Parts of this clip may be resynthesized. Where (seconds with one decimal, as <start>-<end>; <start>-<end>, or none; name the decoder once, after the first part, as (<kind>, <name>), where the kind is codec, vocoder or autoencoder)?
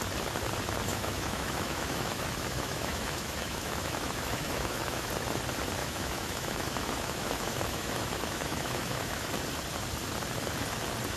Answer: 0.9-5.1 (autoencoder, DAC-VAE); 5.8-9.3